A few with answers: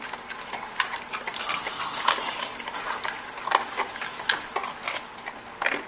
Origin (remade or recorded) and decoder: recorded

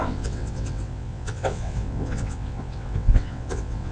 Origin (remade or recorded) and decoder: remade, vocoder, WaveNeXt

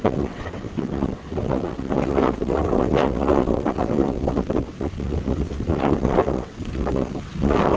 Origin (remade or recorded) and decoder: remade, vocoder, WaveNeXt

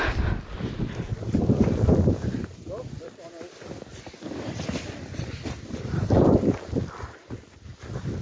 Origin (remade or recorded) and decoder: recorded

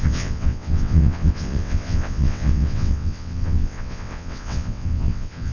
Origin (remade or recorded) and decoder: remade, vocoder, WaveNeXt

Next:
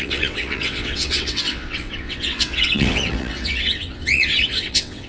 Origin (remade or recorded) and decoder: remade, vocoder, WaveNeXt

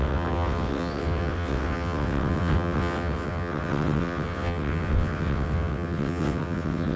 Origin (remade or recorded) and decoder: remade, vocoder, WaveNeXt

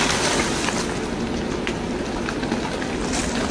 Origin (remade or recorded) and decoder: recorded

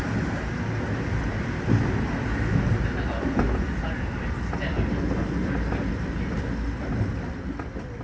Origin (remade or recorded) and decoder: recorded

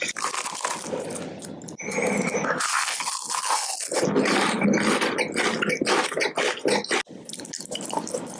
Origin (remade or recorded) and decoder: recorded